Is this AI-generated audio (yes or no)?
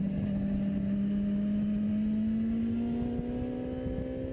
no